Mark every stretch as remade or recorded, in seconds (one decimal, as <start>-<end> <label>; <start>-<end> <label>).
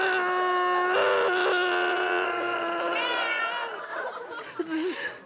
0.0-1.9 recorded; 1.9-3.4 remade; 3.4-5.3 recorded